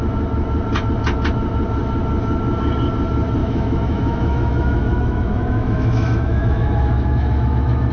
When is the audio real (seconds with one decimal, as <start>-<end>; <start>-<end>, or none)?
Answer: 0.0-3.4